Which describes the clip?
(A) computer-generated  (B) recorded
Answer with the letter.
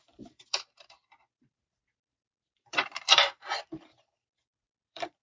A